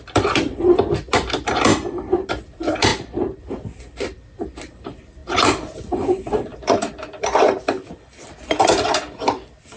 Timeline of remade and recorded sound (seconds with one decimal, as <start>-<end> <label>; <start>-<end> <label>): 0.0-9.8 remade